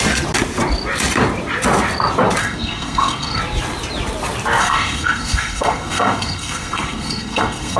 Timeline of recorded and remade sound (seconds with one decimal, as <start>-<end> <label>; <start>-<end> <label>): 0.0-2.4 recorded; 2.4-3.4 remade; 3.4-4.6 recorded; 4.6-7.8 remade

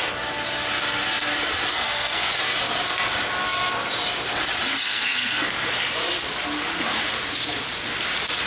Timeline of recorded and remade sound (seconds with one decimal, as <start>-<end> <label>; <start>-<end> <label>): 0.0-1.7 recorded; 1.7-2.3 remade; 2.3-4.9 recorded; 4.9-5.5 remade; 5.5-8.5 recorded

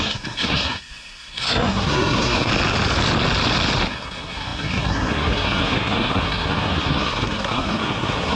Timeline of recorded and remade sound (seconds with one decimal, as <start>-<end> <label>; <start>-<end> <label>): 0.0-2.5 remade; 2.5-3.9 recorded; 3.9-8.4 remade

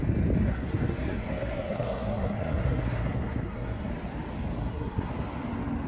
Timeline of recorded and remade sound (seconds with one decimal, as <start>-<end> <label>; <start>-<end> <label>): 0.0-0.4 recorded; 0.4-3.9 remade; 3.9-4.6 recorded; 4.6-5.1 remade; 5.1-5.9 recorded